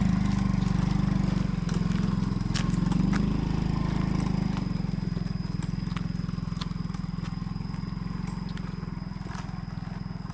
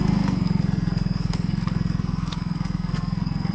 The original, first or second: first